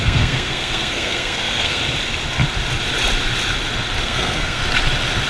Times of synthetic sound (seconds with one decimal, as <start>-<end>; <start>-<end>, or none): 0.0-1.8; 4.0-4.6